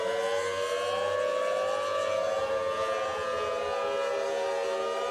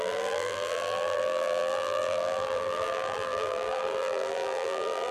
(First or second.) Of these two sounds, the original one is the first